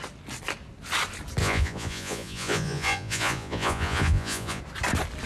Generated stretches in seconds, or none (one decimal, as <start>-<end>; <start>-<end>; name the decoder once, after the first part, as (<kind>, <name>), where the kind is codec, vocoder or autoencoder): 1.4-4.6 (vocoder, Vocos)